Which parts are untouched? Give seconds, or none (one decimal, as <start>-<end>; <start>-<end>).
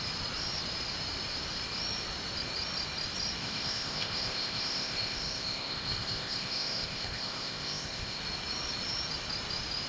0.0-3.4; 8.2-9.9